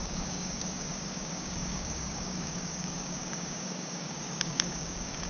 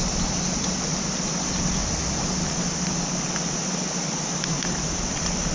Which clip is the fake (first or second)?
first